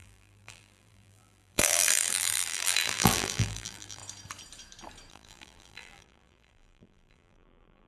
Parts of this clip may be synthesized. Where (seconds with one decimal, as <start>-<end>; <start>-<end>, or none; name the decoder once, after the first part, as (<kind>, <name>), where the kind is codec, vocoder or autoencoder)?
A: 0.0-4.0 (vocoder, BigVGAN v2); 5.1-7.9